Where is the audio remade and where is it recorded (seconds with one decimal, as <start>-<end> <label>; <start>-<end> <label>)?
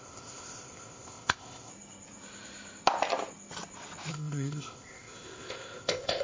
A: 0.0-1.7 remade; 1.7-4.1 recorded; 4.1-6.2 remade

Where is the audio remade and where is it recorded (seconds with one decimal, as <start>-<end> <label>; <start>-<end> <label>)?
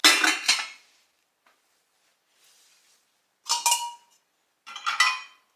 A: 0.0-5.6 recorded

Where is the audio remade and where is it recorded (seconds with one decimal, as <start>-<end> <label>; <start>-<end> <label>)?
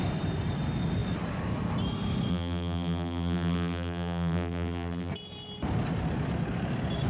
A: 0.0-2.3 recorded; 2.3-5.1 remade; 5.1-7.1 recorded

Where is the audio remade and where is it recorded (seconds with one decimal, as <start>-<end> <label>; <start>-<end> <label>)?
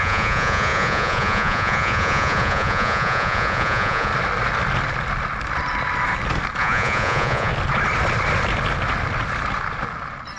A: 0.0-4.1 remade; 4.1-6.6 recorded; 6.6-7.5 remade; 7.5-10.4 recorded